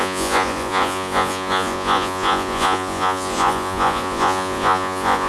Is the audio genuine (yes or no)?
no